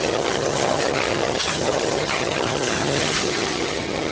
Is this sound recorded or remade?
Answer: remade